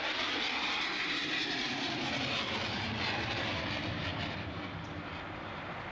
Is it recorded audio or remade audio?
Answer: recorded